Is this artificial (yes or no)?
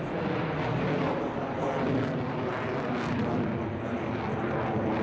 no